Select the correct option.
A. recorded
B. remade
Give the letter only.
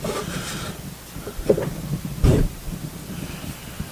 A